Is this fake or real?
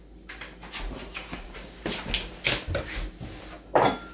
real